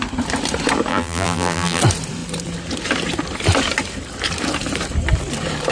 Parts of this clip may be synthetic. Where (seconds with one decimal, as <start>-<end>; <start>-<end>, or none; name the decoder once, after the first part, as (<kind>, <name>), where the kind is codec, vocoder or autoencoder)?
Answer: 0.9-1.8 (vocoder, BigVGAN v2)